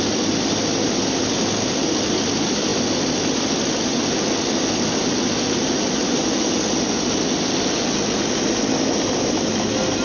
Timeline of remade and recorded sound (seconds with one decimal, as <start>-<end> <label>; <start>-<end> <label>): 0.0-10.0 recorded